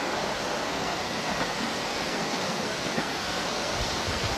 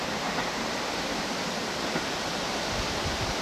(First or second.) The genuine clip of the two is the second